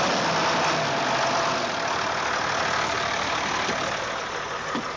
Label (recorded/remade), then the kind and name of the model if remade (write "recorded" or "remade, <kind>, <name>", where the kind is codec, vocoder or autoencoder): recorded